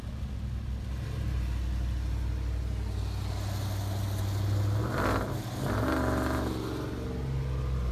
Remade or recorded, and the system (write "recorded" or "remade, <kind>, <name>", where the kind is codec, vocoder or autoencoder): recorded